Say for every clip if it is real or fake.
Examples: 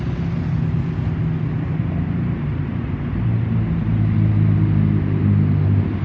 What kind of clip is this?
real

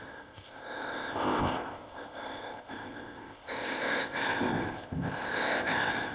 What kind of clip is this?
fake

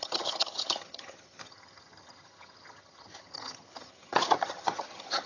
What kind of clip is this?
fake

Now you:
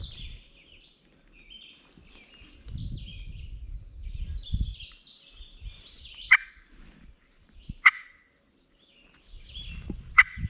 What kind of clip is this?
real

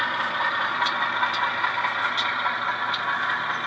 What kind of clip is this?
real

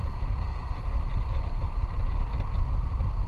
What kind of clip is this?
real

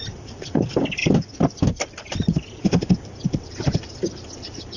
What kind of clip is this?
real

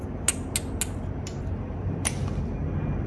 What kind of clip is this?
real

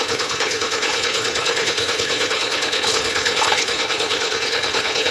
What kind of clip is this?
fake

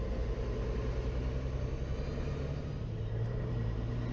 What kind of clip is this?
real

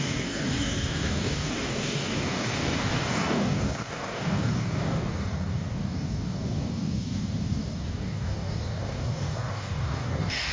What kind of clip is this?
fake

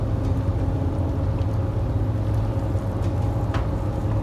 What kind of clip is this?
real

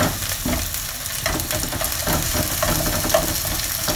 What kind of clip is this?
real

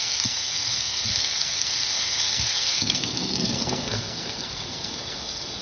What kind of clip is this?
fake